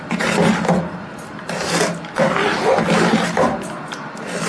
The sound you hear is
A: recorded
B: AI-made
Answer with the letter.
A